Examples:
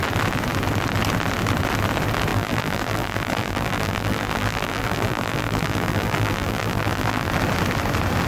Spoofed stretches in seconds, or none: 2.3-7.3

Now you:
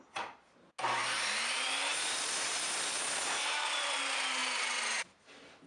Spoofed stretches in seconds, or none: 1.0-4.0; 4.4-5.2